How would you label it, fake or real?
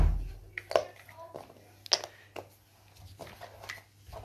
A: real